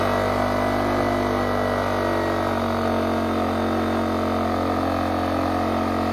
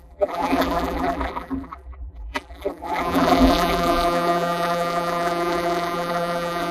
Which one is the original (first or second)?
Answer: first